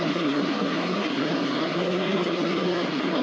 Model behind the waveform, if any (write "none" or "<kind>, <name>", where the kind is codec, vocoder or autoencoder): codec, SNAC